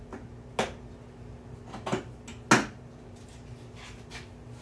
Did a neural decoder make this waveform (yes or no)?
no